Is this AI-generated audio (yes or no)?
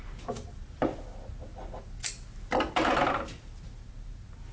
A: no